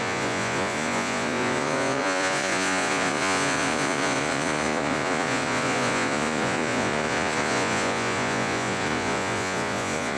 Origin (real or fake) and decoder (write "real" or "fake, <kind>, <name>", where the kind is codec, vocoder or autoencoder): fake, vocoder, Vocos